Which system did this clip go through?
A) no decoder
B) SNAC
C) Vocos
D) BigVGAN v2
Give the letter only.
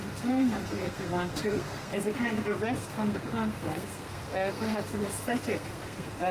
B